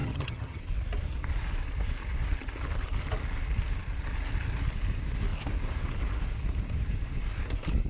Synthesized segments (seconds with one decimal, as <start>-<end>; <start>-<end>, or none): 0.0-0.6